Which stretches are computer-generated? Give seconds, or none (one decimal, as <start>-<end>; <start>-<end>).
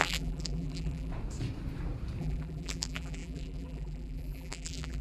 0.0-1.1; 2.2-5.0